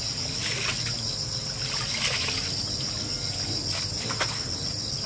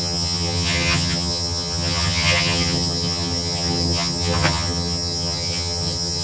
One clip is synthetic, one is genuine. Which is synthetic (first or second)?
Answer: second